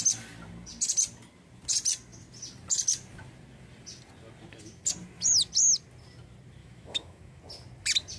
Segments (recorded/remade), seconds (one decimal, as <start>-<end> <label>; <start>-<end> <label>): 0.0-6.6 recorded; 6.6-7.4 remade; 7.4-8.2 recorded

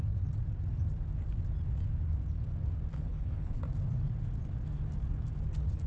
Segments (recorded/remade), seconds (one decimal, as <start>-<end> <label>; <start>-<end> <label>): 0.0-2.9 recorded; 2.9-3.6 remade; 3.6-5.9 recorded

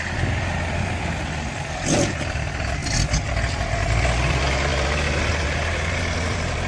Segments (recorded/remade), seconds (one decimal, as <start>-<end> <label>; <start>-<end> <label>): 0.0-2.8 remade; 2.8-4.3 recorded; 4.3-4.7 remade; 4.7-6.0 recorded; 6.0-6.7 remade